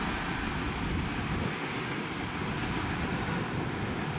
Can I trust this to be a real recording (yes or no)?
yes